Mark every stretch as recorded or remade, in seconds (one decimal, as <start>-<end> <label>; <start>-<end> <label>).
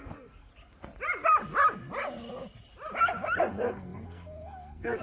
0.0-0.5 remade; 0.5-3.5 recorded; 3.5-5.0 remade